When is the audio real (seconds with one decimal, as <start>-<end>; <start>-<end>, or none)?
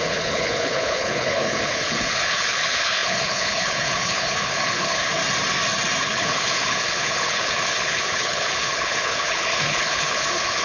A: 5.2-6.0